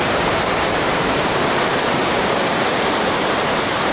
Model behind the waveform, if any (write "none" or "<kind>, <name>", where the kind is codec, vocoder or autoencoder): vocoder, BigVGAN v2